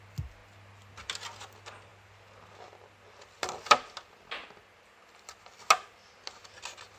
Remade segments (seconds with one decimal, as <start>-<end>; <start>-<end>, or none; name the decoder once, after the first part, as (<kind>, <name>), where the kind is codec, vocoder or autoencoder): none